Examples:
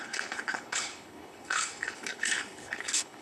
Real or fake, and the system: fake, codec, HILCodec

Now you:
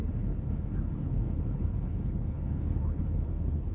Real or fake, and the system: fake, codec, HILCodec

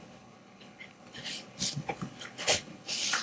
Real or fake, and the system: fake, codec, HILCodec